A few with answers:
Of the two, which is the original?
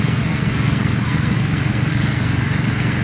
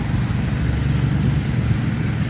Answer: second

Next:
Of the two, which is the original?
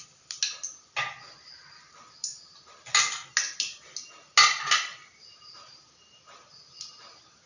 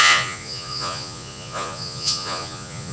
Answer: first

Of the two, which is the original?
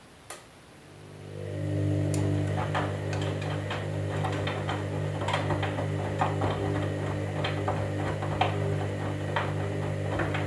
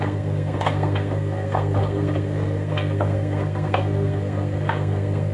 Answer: first